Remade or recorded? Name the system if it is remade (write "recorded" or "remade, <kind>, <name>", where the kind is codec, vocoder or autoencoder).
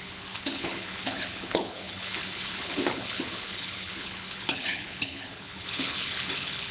remade, codec, HILCodec